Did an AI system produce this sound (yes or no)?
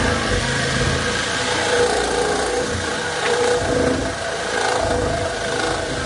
yes